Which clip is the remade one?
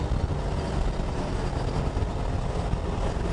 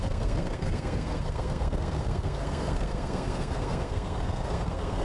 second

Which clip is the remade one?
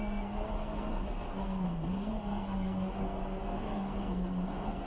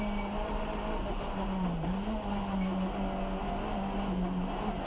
first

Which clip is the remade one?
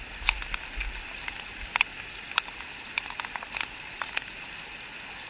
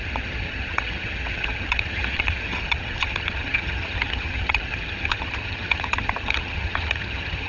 second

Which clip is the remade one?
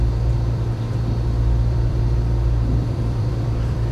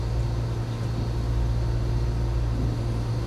first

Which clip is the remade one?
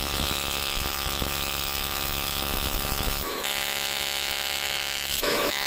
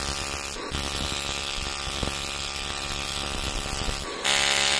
first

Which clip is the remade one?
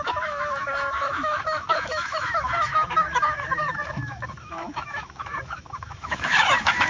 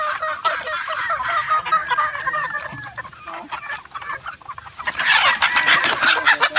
first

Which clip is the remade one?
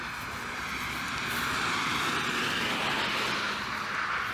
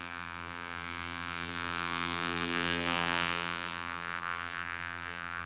second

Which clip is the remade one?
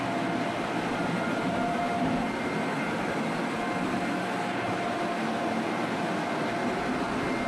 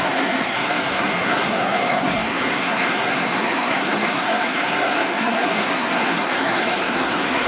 second